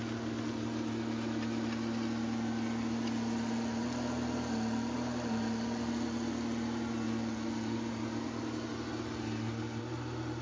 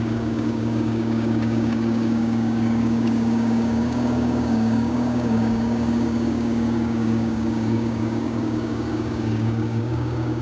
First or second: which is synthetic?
second